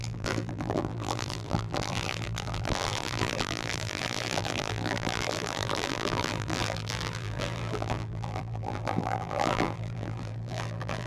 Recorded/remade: remade